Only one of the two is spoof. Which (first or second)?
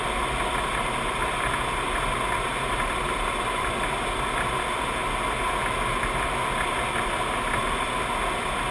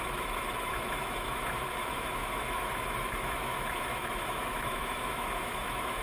second